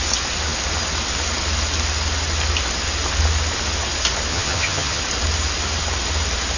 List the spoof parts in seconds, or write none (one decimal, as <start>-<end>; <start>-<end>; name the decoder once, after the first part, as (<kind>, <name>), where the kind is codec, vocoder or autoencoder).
4.3-5.0 (vocoder, HiFi-GAN)